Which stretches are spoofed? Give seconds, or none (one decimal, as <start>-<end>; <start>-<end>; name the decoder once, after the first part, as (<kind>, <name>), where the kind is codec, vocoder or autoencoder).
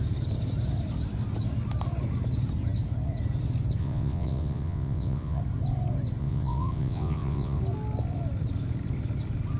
3.8-5.4 (vocoder, WaveNeXt); 6.2-7.6